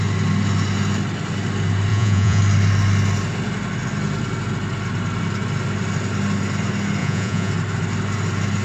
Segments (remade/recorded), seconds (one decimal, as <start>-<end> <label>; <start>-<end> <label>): 0.0-1.9 recorded; 1.9-2.4 remade; 2.4-7.0 recorded; 7.0-7.5 remade; 7.5-8.6 recorded